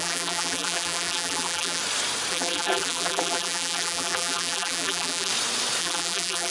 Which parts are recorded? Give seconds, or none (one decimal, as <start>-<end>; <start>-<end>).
1.8-2.3; 5.3-5.8